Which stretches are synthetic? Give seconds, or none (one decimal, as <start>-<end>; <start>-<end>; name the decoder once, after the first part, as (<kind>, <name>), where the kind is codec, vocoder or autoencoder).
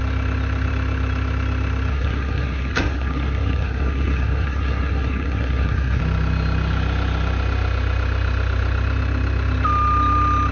1.9-6.0 (codec, SNAC)